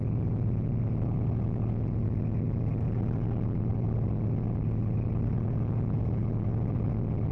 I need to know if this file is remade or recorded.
recorded